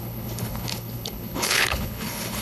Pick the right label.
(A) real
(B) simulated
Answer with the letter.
B